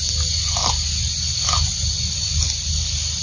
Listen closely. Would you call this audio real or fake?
real